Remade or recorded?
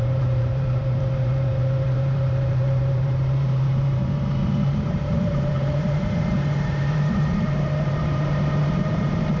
remade